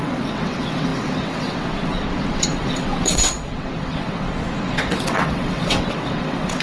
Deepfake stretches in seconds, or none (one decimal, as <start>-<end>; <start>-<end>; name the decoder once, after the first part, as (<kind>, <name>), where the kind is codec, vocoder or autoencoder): 0.0-6.6 (vocoder, WaveNeXt)